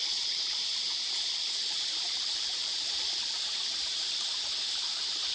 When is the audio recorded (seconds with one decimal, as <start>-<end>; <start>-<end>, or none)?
3.2-3.9